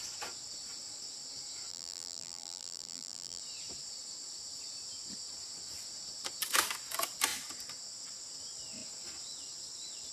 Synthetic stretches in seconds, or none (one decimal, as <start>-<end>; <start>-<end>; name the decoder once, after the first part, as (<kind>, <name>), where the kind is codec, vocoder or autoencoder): 1.7-3.4 (vocoder, BigVGAN v2)